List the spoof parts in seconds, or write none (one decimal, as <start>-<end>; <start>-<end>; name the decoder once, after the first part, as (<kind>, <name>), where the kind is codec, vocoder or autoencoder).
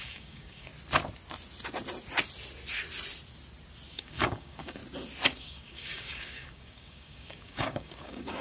0.0-0.7 (codec, DAC); 3.9-4.8; 5.4-8.4